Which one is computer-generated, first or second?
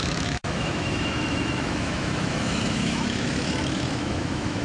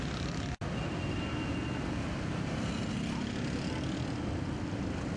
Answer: first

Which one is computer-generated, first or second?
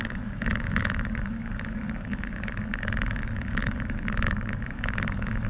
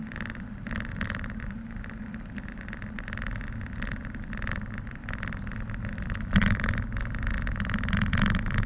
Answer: first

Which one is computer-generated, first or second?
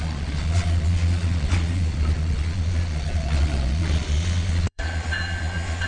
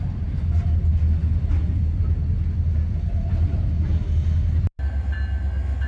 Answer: first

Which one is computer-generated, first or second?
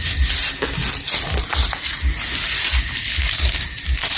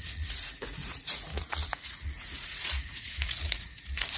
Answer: second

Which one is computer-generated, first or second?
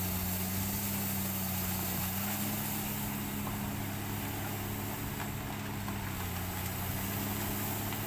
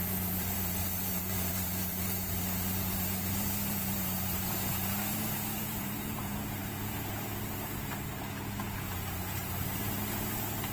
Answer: second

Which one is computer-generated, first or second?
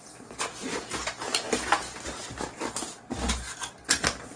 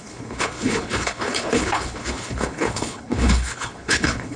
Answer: second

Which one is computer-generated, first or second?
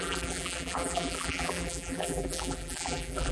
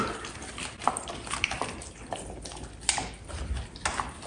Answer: first